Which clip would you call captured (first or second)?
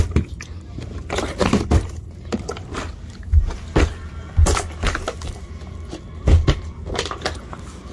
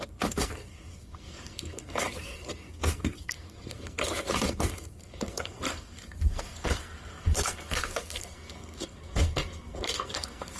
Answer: first